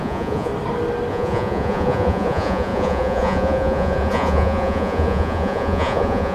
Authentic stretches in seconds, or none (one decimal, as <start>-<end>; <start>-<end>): 0.5-1.1